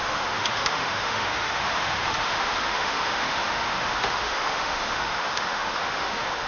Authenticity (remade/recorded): remade